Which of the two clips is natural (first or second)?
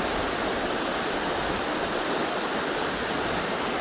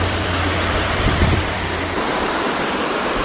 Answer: first